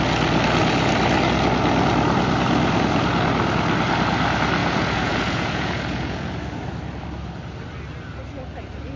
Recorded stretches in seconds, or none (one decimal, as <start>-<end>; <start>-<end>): 0.0-4.6; 6.3-9.0